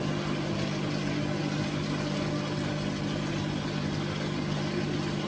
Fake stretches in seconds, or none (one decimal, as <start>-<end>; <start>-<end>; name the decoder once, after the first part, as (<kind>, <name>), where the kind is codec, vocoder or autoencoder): none